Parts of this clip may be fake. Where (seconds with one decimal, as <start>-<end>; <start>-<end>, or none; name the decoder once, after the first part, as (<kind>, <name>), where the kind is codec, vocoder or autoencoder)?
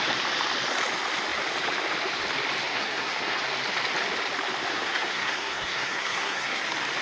2.7-3.4 (codec, SNAC); 4.7-6.6